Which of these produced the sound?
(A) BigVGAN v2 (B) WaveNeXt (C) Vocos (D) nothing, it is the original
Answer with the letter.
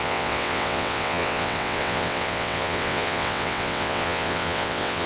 B